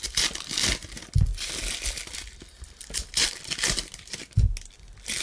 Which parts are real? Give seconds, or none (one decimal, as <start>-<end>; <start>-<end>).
0.0-5.2